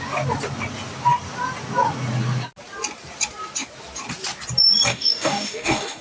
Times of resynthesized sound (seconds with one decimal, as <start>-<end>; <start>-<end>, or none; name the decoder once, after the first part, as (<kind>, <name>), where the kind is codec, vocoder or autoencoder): 4.9-6.0 (codec, DAC)